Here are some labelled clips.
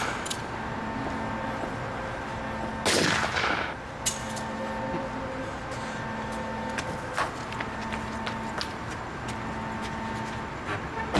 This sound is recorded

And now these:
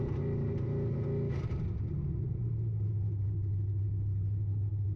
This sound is recorded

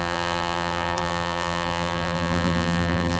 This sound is remade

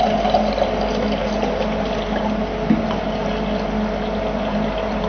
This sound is recorded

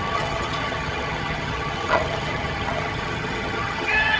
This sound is remade